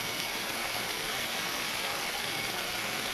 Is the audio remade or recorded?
remade